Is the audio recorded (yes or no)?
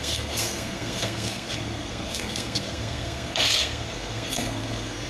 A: no